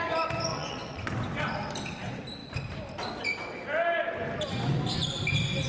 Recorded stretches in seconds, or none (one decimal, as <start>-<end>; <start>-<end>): 0.0-0.5; 1.1-5.7